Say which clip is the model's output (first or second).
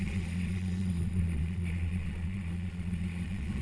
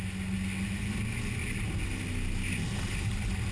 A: first